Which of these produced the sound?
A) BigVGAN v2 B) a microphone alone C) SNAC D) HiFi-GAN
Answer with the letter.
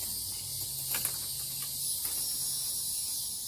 B